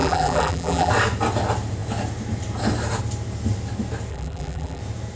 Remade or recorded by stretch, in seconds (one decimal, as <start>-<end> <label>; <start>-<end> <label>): 0.0-0.9 remade; 0.9-4.1 recorded; 4.1-4.8 remade; 4.8-5.2 recorded